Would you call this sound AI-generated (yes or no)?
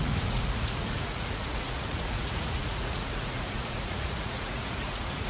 yes